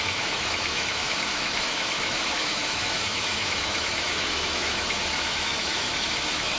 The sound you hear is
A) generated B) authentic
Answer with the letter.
A